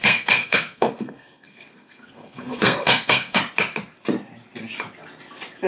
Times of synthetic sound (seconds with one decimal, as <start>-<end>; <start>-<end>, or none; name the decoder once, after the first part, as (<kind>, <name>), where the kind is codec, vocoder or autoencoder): 0.0-3.4 (codec, SNAC)